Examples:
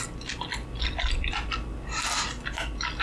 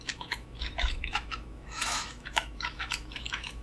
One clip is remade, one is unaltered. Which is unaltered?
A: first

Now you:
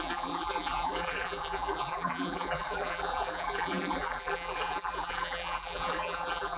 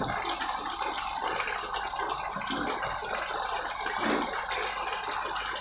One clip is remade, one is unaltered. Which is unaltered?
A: second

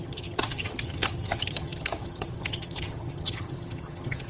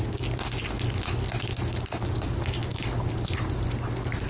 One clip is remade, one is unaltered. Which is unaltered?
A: second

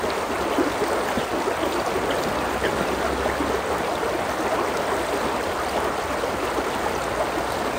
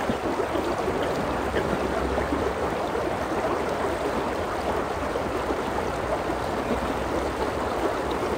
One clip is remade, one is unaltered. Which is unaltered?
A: first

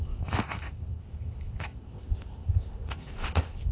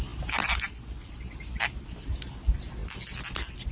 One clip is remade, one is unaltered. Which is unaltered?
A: second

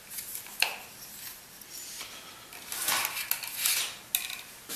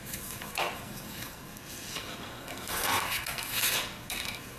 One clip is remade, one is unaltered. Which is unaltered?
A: first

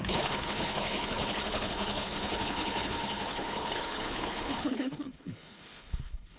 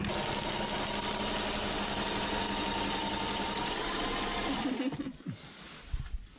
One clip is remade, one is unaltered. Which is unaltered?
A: second